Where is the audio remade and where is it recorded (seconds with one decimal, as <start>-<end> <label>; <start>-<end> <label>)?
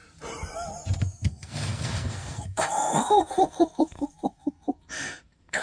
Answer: 0.0-1.0 recorded; 1.0-5.6 remade